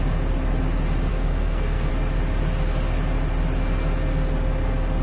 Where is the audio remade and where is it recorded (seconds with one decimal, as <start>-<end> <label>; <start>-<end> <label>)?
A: 0.0-1.1 recorded; 1.1-1.9 remade; 1.9-5.0 recorded